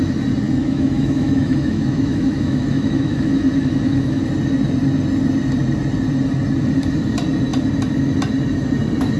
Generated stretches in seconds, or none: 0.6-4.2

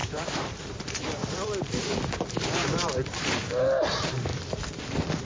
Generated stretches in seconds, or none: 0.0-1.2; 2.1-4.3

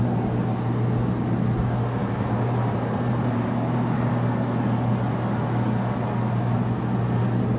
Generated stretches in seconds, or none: 2.0-4.1